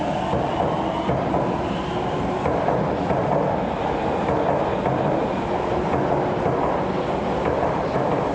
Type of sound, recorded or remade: recorded